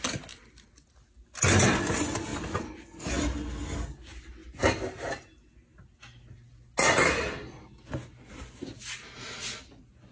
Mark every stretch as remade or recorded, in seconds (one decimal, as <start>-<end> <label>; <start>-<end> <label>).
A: 0.0-10.1 recorded